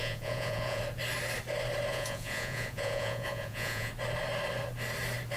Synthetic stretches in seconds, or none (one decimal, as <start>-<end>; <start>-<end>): 0.0-0.8; 1.9-3.9